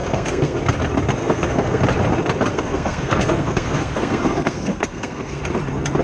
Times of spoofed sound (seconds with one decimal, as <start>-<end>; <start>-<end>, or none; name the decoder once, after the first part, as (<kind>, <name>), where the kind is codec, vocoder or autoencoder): 0.0-0.6 (codec, SNAC); 1.2-1.8; 2.5-5.4